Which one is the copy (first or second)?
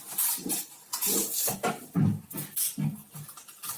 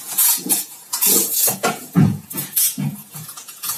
second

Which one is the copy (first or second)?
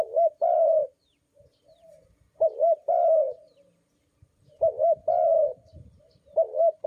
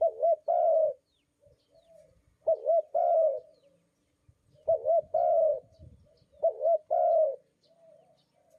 first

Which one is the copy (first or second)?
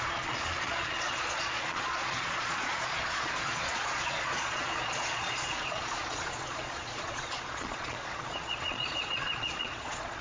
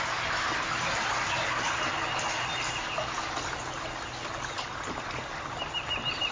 first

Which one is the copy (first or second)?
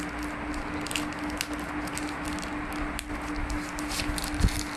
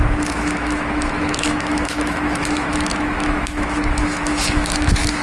second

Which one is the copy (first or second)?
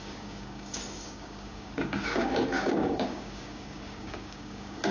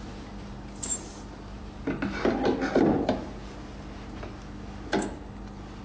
first